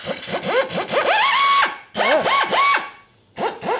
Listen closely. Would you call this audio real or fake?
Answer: real